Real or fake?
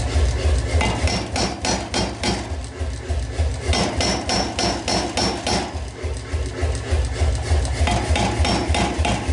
real